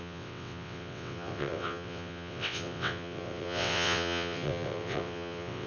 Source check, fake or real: fake